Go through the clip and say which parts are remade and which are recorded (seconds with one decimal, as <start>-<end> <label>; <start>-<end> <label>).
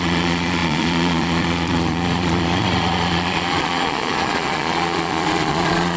0.0-6.0 remade